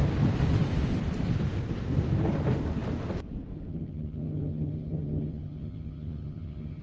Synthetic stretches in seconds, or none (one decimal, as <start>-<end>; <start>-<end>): 3.7-6.8